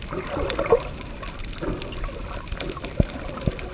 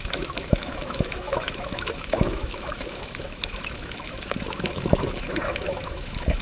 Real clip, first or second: first